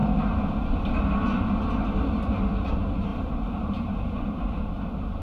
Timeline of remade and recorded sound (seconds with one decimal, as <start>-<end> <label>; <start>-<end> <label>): 0.0-2.7 recorded; 2.7-5.2 remade